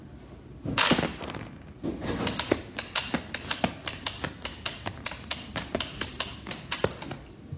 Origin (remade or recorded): recorded